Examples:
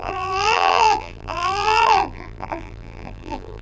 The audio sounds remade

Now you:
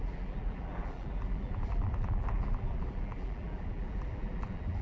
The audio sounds remade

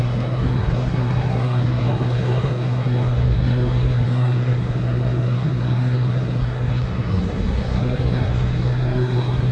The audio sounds remade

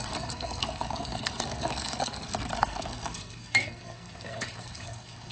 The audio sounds remade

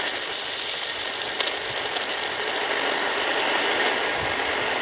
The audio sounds recorded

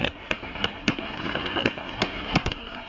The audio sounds remade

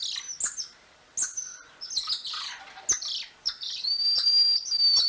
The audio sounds recorded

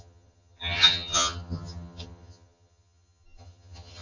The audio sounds remade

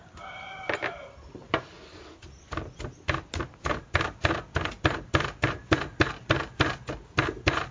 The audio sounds recorded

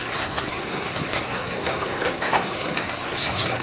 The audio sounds remade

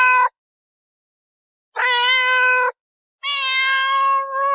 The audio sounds recorded